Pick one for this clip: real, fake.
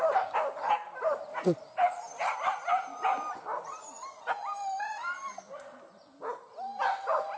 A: real